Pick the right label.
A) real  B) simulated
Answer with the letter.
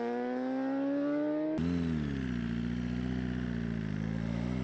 A